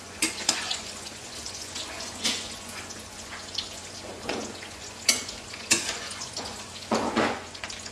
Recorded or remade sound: remade